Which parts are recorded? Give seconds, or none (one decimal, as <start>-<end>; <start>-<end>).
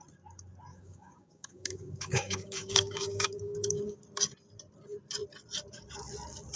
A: 0.0-0.7; 4.0-6.6